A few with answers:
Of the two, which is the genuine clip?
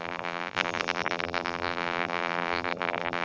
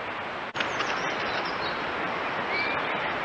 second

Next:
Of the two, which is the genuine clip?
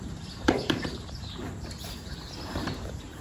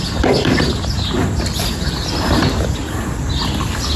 second